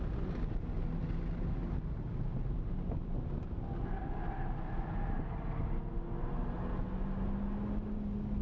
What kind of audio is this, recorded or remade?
recorded